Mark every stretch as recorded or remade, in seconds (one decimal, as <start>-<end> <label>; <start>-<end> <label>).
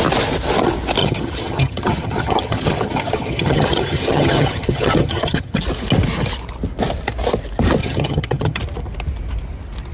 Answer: 0.0-1.0 recorded; 1.0-5.6 remade; 5.6-7.8 recorded; 7.8-8.6 remade; 8.6-9.9 recorded